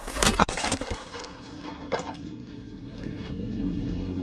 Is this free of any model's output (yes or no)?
no